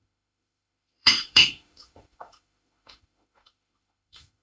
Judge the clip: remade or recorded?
remade